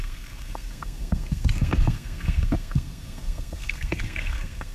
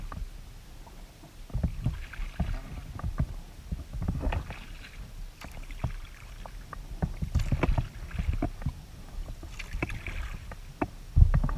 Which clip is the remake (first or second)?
first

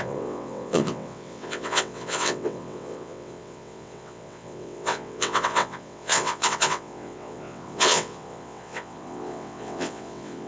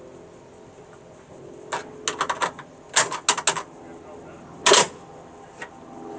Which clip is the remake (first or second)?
first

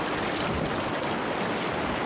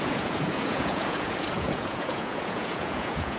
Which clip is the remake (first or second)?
second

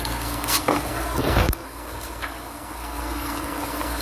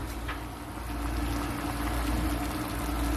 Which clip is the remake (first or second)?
first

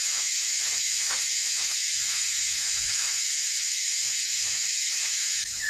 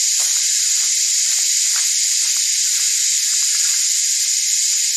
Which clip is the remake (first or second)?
first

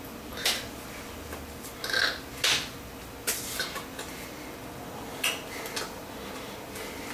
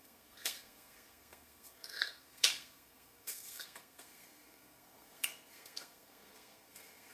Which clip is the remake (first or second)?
second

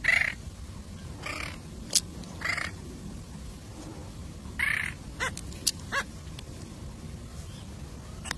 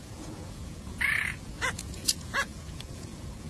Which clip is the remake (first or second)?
second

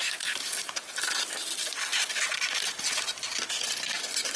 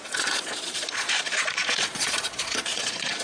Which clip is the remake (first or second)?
second